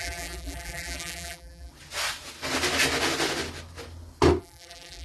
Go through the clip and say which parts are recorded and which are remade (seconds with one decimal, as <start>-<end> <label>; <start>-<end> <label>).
0.0-1.7 remade; 1.7-4.4 recorded; 4.4-5.0 remade